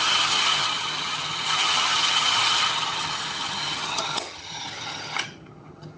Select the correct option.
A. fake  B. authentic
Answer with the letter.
A